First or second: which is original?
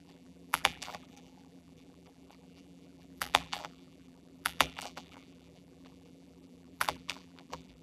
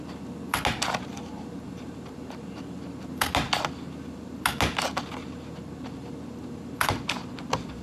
second